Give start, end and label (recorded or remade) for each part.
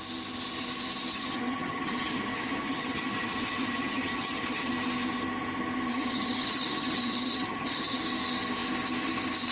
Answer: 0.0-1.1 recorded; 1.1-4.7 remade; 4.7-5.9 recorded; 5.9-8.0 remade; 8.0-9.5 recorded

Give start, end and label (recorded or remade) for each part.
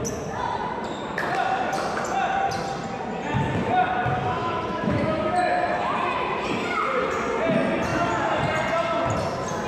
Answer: 0.0-4.4 recorded; 4.4-5.2 remade; 5.2-9.7 recorded